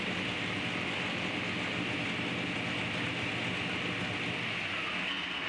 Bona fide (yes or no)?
yes